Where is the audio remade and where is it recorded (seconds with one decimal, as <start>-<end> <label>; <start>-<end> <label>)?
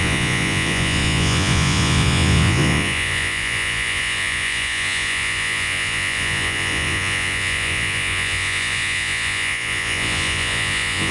0.0-11.1 remade